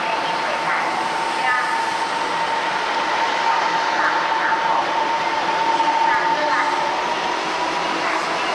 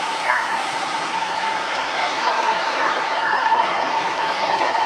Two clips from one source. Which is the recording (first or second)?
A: first